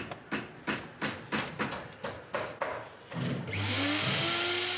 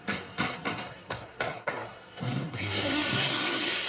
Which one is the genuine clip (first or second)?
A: first